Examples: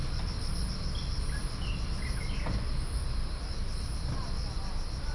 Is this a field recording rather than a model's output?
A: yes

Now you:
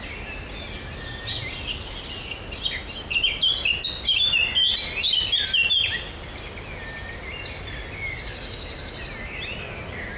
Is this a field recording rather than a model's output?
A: yes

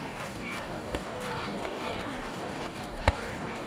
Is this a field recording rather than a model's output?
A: no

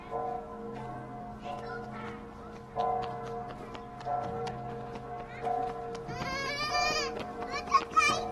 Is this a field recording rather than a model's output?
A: yes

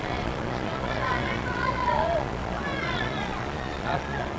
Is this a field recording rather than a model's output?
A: no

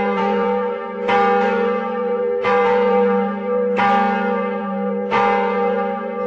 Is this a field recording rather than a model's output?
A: no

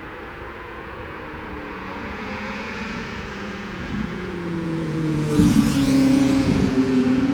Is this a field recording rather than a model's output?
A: no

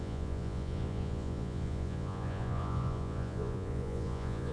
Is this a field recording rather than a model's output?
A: no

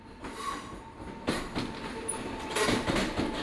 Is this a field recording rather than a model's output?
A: yes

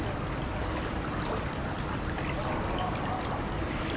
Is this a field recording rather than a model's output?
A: yes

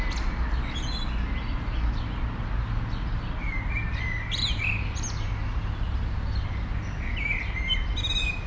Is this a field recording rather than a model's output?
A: yes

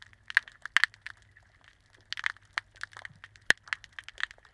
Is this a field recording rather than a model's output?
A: yes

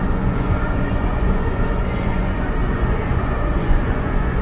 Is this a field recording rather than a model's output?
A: no